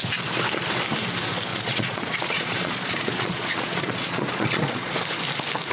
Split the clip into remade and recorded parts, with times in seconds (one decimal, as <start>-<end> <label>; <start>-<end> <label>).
0.0-1.5 recorded; 1.5-4.9 remade; 4.9-5.7 recorded

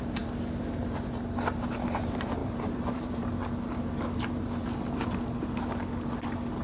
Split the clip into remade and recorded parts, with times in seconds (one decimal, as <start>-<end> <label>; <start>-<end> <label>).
0.0-2.4 recorded; 2.4-3.2 remade; 3.2-6.6 recorded

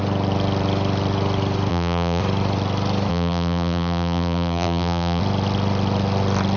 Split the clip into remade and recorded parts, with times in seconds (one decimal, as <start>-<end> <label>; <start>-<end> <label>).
0.0-1.7 recorded; 1.7-2.2 remade; 2.2-3.1 recorded; 3.1-5.2 remade; 5.2-6.6 recorded

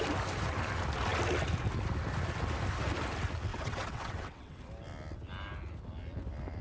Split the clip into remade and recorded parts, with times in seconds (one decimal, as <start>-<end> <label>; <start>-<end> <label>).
0.0-3.5 recorded; 3.5-4.6 remade; 4.6-6.6 recorded